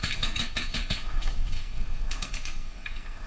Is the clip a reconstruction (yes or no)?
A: yes